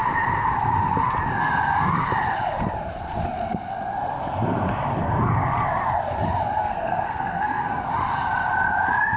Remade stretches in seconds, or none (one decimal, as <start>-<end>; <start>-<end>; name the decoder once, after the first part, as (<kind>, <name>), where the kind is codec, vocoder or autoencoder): 6.6-7.9 (codec, SNAC)